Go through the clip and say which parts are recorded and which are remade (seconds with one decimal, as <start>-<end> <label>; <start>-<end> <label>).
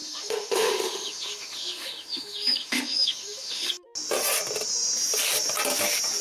0.0-3.7 remade; 3.7-6.2 recorded